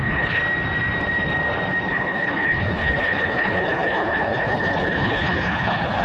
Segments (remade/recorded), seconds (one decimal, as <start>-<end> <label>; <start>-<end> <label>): 0.0-0.4 remade; 0.4-1.9 recorded; 1.9-6.0 remade